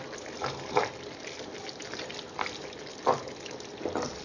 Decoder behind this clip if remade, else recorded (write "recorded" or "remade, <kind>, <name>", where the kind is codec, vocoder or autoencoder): recorded